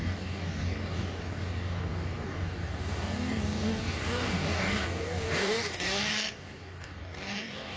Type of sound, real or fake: fake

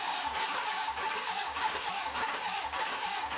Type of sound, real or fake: fake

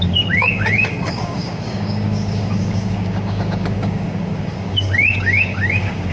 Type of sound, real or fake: fake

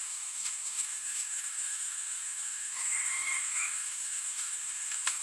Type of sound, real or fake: fake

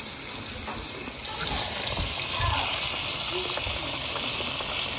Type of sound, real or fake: real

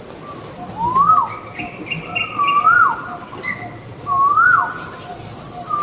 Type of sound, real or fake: real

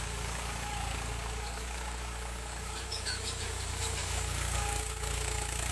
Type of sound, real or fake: fake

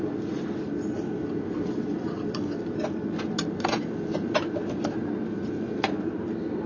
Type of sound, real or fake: real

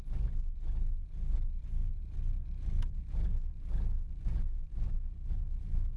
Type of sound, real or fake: real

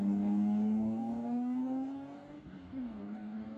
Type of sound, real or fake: fake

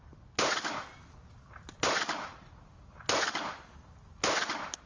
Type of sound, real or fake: real